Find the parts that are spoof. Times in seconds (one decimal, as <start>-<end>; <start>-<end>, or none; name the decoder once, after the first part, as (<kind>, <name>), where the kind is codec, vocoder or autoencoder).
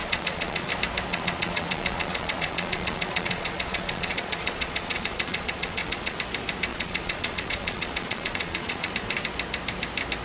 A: 0.0-0.7 (vocoder, Vocos); 1.1-6.2; 6.7-8.9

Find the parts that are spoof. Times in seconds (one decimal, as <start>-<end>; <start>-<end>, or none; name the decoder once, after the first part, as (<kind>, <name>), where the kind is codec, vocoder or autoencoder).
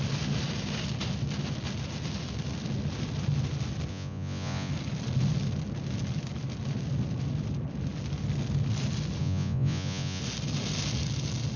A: 3.9-4.7 (vocoder, Vocos); 9.2-10.2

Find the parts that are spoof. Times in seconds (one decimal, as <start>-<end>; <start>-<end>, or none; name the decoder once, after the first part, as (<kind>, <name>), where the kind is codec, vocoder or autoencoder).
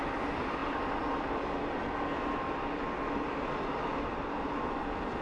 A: none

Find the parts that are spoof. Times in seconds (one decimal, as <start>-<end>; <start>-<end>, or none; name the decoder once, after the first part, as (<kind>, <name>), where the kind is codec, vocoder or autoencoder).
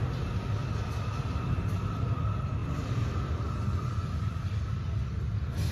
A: 0.6-2.0 (vocoder, BigVGAN v2); 2.6-4.8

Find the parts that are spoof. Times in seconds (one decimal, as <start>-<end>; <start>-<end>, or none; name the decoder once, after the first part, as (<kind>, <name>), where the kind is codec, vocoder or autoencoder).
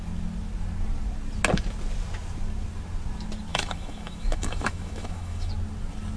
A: 3.5-5.5 (autoencoder, DAC-VAE)